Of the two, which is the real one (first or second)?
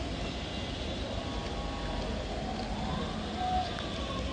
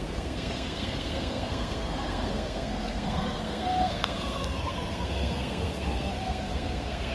first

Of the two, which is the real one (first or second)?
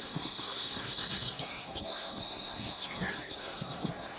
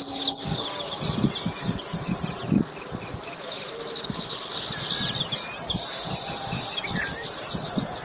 second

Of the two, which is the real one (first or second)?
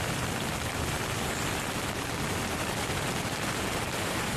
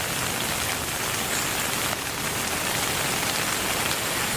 second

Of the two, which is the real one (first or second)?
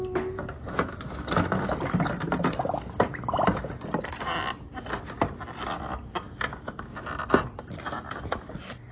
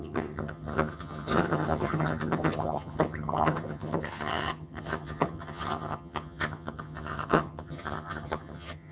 first